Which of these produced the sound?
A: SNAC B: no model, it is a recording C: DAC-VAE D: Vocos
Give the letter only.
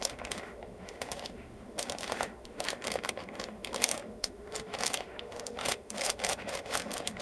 C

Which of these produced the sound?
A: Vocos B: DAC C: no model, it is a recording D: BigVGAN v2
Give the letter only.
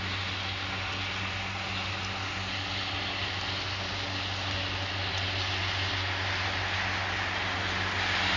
C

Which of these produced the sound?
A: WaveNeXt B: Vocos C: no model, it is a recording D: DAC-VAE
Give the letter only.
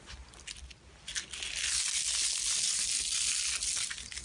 C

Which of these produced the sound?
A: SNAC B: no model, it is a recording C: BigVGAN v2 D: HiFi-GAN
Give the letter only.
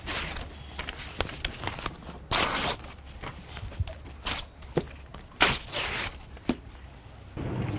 B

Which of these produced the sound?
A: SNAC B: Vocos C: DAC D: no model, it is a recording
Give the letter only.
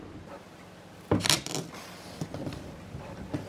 D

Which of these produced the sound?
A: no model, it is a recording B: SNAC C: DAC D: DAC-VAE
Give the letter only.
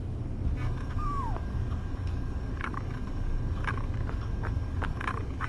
C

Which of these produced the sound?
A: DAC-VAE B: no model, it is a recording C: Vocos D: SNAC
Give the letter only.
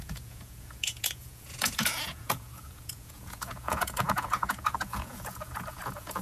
C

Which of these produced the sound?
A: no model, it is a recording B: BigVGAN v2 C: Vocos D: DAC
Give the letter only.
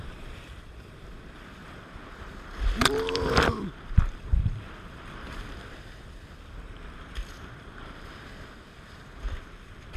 B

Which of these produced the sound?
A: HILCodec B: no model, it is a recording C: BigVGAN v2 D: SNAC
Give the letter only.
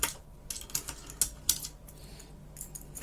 B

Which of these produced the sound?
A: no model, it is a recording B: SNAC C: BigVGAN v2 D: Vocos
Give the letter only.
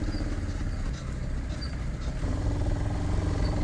A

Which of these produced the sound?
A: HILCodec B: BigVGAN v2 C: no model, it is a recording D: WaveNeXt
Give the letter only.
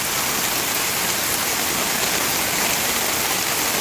C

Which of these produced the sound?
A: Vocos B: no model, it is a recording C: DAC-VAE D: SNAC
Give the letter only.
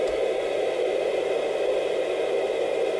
B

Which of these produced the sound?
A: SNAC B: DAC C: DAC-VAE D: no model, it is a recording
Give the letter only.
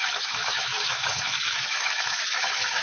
C